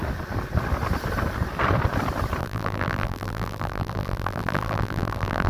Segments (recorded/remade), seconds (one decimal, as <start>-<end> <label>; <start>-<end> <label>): 0.0-2.4 recorded; 2.4-5.5 remade